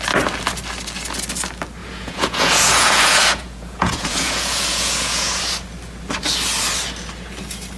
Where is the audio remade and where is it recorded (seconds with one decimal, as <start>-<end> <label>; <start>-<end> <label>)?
0.0-1.8 recorded; 1.8-5.4 remade; 5.4-7.8 recorded